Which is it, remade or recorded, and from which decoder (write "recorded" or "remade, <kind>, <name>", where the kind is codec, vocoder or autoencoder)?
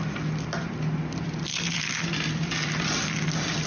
recorded